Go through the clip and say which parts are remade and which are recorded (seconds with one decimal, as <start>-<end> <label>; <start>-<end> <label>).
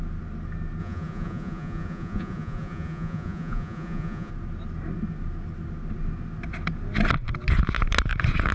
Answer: 0.0-0.8 recorded; 0.8-4.3 remade; 4.3-8.5 recorded